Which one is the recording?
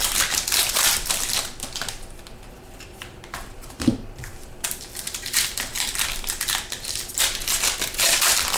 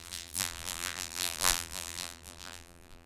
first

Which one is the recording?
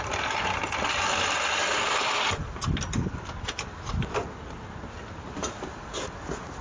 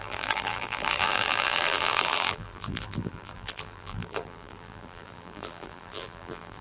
first